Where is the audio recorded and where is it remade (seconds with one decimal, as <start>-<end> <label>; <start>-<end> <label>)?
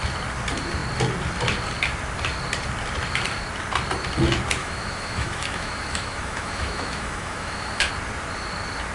0.0-4.6 recorded; 4.6-7.9 remade; 7.9-8.9 recorded